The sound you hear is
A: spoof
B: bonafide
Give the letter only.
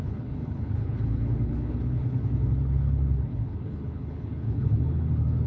A